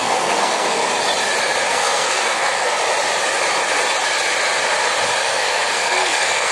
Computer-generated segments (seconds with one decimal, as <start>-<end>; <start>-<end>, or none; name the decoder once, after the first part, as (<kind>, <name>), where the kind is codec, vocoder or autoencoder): 0.0-0.9 (codec, SNAC); 1.7-2.8; 5.2-6.5

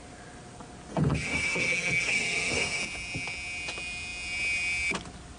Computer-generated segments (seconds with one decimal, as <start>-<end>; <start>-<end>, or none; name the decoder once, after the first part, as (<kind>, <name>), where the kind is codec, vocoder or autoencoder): 0.9-2.8 (codec, SNAC)

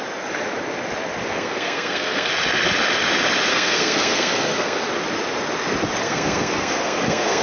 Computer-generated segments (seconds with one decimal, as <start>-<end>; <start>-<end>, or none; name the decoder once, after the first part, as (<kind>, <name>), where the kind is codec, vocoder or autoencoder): 1.3-2.3 (codec, SNAC); 3.5-4.9; 6.0-7.4

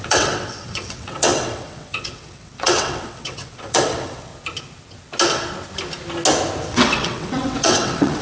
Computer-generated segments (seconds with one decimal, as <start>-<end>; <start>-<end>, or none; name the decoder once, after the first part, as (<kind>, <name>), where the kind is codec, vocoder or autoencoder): 0.0-4.3 (vocoder, WaveNeXt); 6.7-8.2

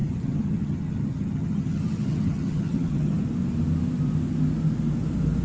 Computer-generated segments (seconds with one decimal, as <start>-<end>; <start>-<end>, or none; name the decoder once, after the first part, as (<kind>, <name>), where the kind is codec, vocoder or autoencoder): 0.0-3.2 (vocoder, HiFi-GAN)

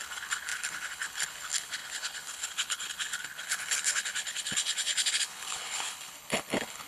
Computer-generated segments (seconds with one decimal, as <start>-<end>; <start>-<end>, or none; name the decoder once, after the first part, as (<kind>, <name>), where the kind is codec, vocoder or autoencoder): 0.0-6.9 (codec, HILCodec)

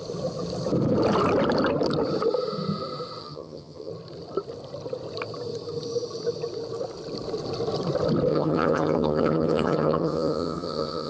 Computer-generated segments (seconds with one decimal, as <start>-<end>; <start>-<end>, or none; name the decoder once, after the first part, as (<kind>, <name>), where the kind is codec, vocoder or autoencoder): 3.2-3.9 (vocoder, HiFi-GAN); 8.3-11.1